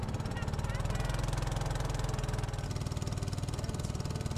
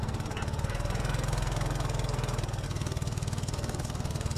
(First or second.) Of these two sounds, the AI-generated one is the second